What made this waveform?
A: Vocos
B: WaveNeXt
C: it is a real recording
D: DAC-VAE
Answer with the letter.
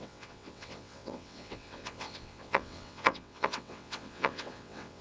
B